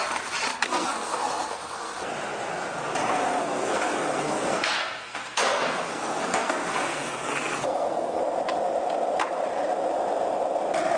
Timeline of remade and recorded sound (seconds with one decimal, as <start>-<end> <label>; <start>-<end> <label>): 0.0-0.5 recorded; 0.5-2.1 remade; 2.1-3.0 recorded; 3.0-8.2 remade; 8.2-11.0 recorded